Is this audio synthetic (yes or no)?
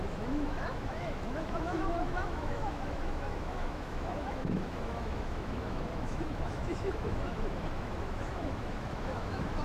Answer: yes